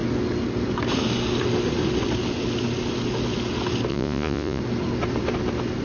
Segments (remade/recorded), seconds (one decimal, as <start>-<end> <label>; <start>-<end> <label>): 0.0-3.9 recorded; 3.9-4.6 remade; 4.6-5.8 recorded